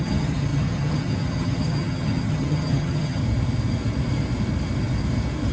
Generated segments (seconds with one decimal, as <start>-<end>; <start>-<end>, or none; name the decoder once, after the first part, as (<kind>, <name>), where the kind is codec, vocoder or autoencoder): 0.0-3.2 (vocoder, HiFi-GAN)